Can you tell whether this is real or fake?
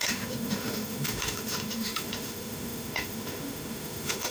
fake